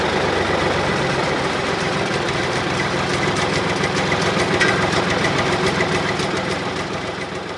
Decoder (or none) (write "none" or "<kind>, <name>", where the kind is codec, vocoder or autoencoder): vocoder, BigVGAN v2